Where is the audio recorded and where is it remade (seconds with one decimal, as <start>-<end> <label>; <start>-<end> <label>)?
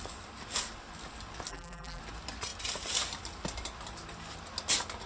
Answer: 0.0-1.5 recorded; 1.5-2.0 remade; 2.0-5.1 recorded